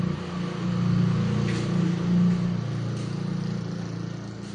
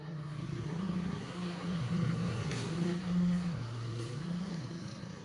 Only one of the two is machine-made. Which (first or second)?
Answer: second